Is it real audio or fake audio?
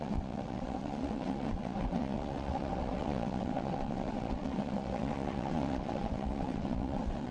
fake